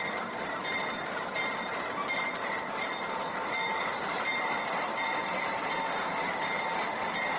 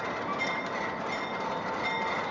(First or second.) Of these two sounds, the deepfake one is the first